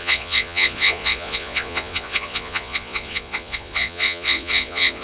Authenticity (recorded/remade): remade